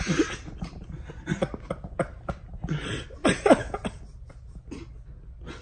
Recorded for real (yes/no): yes